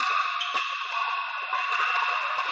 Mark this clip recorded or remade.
recorded